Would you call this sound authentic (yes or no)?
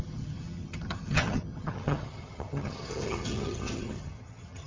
no